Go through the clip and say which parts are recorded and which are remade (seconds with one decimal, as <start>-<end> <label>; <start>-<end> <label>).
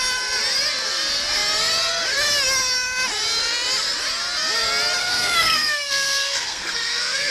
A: 0.0-5.0 recorded; 5.0-7.3 remade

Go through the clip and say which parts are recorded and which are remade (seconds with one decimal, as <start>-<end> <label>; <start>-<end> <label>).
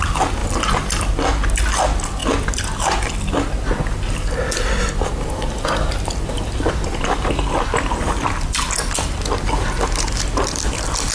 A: 0.0-11.1 recorded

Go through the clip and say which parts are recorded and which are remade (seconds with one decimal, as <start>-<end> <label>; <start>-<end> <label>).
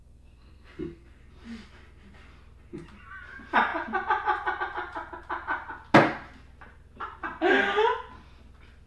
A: 0.0-1.2 remade; 1.2-8.9 recorded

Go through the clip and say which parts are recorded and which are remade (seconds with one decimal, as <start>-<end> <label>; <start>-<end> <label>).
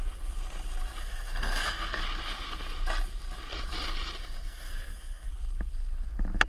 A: 0.0-1.0 recorded; 1.0-2.0 remade; 2.0-4.2 recorded; 4.2-5.3 remade; 5.3-6.5 recorded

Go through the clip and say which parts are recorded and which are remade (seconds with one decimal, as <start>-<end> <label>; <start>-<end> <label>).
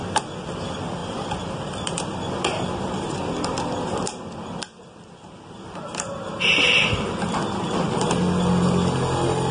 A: 0.0-9.5 recorded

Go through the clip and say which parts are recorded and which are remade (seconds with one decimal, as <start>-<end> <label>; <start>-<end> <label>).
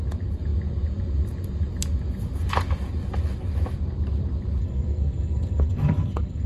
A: 0.0-4.6 recorded; 4.6-6.5 remade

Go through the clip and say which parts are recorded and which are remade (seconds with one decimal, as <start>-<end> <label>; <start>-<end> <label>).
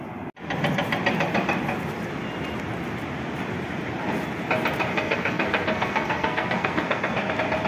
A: 0.0-4.9 recorded; 4.9-7.3 remade; 7.3-7.7 recorded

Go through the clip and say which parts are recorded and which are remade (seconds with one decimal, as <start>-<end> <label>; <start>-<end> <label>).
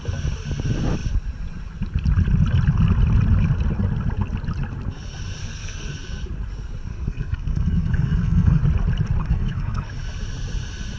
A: 0.0-5.4 recorded; 5.4-5.9 remade; 5.9-6.9 recorded; 6.9-8.6 remade; 8.6-9.2 recorded; 9.2-9.9 remade; 9.9-11.0 recorded